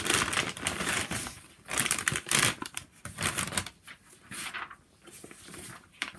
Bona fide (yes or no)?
yes